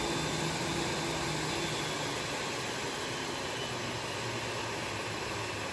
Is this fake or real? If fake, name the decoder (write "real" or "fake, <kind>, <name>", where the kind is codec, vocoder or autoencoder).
real